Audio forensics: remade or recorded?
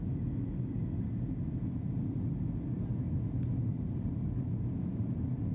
recorded